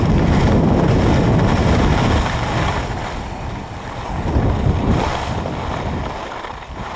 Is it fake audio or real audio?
real